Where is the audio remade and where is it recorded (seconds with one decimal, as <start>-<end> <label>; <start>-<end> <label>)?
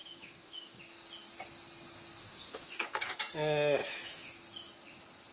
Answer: 0.0-0.8 remade; 0.8-2.2 recorded; 2.2-3.2 remade; 3.2-3.8 recorded; 3.8-4.3 remade; 4.3-5.3 recorded